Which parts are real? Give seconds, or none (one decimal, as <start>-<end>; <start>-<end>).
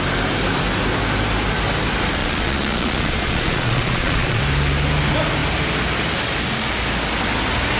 0.0-2.2; 4.4-7.8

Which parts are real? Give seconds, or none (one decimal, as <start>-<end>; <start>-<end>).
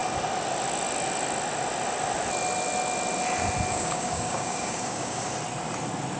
0.0-3.7; 5.3-6.2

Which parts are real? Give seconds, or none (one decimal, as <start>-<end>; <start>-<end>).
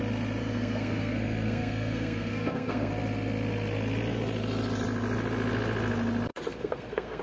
0.0-0.4; 2.9-6.3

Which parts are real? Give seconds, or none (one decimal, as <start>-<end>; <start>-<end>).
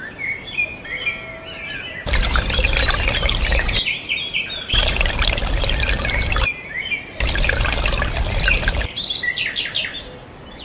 0.0-10.6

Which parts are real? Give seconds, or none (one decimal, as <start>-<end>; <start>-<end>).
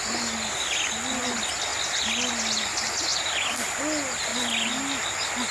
0.0-5.5